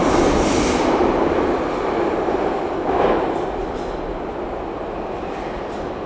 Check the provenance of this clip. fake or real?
real